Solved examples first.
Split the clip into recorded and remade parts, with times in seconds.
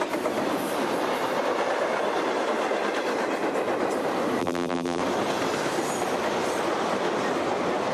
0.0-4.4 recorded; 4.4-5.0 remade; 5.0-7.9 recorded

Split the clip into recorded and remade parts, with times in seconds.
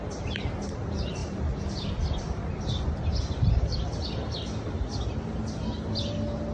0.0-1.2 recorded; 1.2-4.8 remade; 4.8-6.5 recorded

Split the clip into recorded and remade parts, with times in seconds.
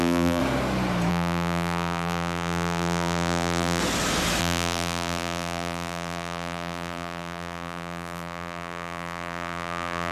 0.0-0.4 remade; 0.4-1.1 recorded; 1.1-3.8 remade; 3.8-4.4 recorded; 4.4-10.1 remade